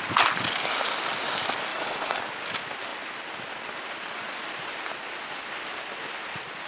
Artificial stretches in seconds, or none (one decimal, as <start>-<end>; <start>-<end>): 1.7-2.2